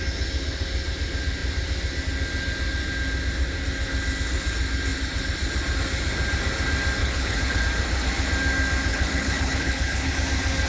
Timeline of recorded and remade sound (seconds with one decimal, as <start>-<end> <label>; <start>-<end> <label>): 0.0-7.0 recorded; 7.0-7.6 remade; 7.6-8.9 recorded; 8.9-10.1 remade; 10.1-10.7 recorded